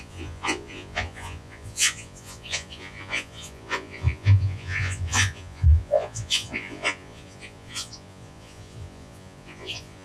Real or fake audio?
fake